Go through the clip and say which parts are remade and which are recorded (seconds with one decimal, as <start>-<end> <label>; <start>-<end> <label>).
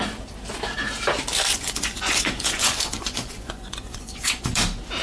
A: 0.0-1.5 recorded; 1.5-4.5 remade; 4.5-5.0 recorded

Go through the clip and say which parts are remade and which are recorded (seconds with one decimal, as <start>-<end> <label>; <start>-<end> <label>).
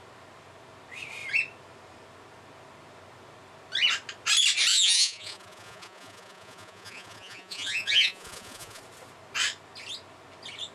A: 0.0-4.7 recorded; 4.7-8.8 remade; 8.8-10.7 recorded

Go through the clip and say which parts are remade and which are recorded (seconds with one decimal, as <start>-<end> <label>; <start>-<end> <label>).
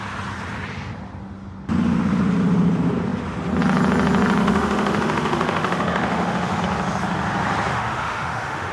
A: 0.0-4.4 recorded; 4.4-6.6 remade; 6.6-7.7 recorded; 7.7-8.7 remade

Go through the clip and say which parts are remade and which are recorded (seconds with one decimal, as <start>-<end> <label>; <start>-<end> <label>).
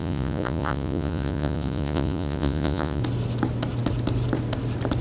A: 0.0-3.0 remade; 3.0-5.0 recorded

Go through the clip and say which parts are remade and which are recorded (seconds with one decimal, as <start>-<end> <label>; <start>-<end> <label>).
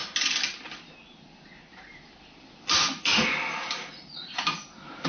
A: 0.0-5.1 recorded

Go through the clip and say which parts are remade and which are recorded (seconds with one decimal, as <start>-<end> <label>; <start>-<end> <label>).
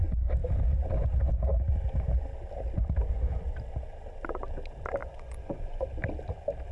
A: 0.0-5.0 recorded; 5.0-5.8 remade; 5.8-6.7 recorded